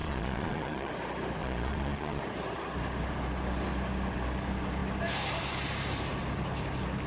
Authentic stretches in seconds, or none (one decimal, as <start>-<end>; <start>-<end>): 0.9-1.4; 2.2-7.1